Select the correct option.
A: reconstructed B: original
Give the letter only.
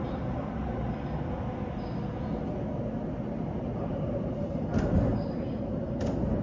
B